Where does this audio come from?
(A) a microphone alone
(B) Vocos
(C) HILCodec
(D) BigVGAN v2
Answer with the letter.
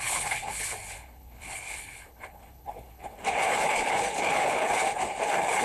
C